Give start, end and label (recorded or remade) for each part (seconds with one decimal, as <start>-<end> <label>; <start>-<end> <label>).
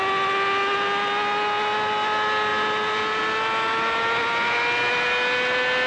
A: 0.0-5.9 recorded